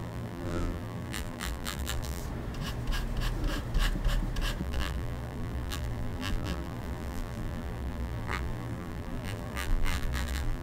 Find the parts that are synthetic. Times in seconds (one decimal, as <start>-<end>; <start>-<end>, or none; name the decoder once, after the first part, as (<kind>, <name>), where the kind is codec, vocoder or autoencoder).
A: 0.0-2.2 (vocoder, BigVGAN v2); 4.6-10.6